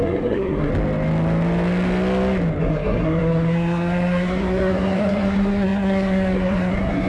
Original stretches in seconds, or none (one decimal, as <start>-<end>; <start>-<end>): 0.7-2.6